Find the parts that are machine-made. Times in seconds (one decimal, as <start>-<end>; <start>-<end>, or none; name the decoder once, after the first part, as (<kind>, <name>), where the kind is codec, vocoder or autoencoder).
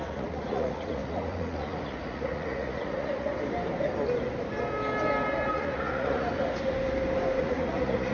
0.0-3.3 (vocoder, Vocos); 5.5-6.3; 7.4-8.1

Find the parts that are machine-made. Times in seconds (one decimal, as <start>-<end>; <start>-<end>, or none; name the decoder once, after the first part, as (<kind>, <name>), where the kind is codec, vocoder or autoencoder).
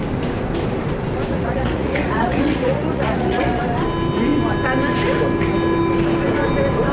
1.3-3.6 (vocoder, Vocos)